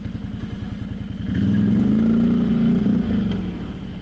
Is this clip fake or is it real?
real